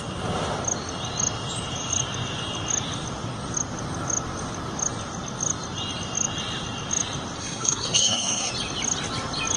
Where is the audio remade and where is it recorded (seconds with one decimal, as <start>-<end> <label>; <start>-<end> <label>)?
0.0-7.4 recorded; 7.4-8.5 remade; 8.5-9.6 recorded